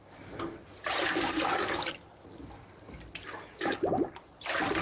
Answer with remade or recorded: recorded